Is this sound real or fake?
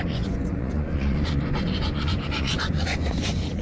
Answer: fake